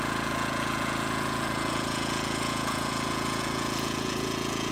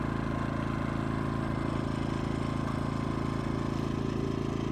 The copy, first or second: first